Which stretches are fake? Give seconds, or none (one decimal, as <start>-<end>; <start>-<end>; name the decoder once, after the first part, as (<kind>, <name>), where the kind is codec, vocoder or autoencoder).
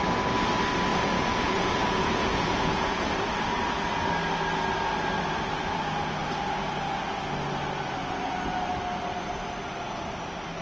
0.9-3.1 (vocoder, Vocos)